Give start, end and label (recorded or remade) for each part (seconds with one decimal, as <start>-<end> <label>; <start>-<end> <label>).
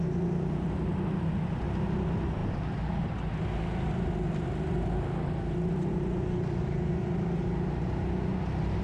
0.0-8.8 recorded